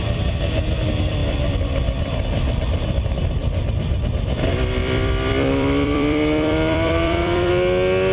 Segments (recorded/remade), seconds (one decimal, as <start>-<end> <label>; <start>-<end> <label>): 0.0-1.2 recorded; 1.2-3.0 remade; 3.0-3.4 recorded; 3.4-4.0 remade; 4.0-4.8 recorded; 4.8-7.5 remade; 7.5-8.1 recorded